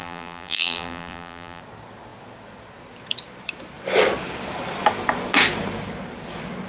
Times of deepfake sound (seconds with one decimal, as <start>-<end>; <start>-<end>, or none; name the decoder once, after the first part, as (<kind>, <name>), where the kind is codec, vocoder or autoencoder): 0.0-1.6 (vocoder, BigVGAN v2)